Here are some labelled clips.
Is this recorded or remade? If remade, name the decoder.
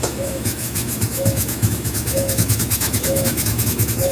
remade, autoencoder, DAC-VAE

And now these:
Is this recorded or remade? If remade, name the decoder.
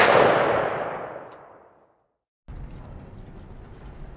recorded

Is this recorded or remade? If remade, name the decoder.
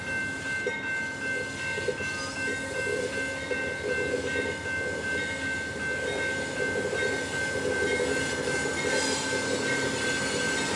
recorded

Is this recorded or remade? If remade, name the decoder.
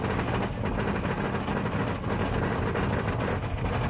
recorded